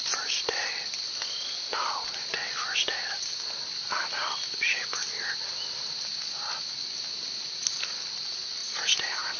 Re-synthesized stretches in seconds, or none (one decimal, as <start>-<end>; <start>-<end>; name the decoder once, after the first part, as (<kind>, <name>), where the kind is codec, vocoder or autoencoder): none